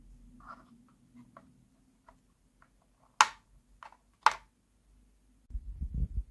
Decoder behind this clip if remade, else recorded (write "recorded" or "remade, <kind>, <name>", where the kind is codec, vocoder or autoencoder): recorded